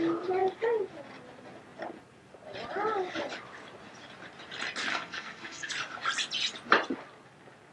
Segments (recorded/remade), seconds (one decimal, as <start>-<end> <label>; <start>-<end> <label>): 0.0-4.9 recorded; 4.9-5.7 remade; 5.7-7.7 recorded